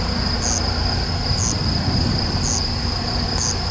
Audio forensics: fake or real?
real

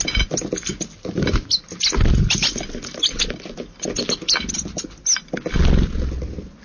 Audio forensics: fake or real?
real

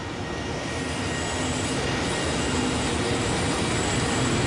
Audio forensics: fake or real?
real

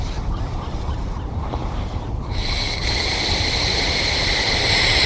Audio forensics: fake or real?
fake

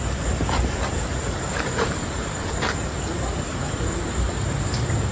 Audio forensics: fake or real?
fake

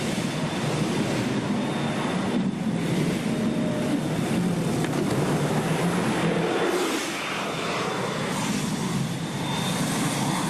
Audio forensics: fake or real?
real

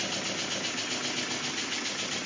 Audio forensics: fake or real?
real